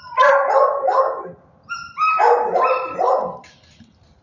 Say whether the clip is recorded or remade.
remade